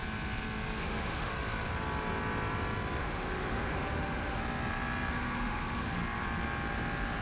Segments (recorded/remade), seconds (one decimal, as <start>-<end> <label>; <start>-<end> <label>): 0.0-0.8 recorded; 0.8-1.3 remade; 1.3-3.0 recorded; 3.0-4.4 remade; 4.4-5.1 recorded; 5.1-6.0 remade; 6.0-7.2 recorded